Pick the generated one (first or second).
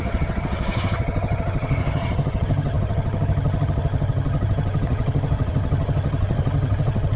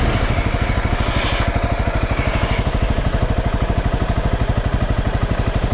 first